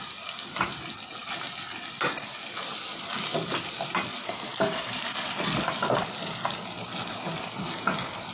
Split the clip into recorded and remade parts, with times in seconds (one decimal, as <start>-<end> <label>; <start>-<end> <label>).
0.0-4.1 recorded; 4.1-5.0 remade; 5.0-8.3 recorded